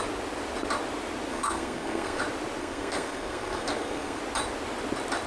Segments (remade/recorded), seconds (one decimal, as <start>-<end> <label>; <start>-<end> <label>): 0.0-1.3 recorded; 1.3-2.2 remade; 2.2-2.6 recorded; 2.6-4.2 remade; 4.2-5.3 recorded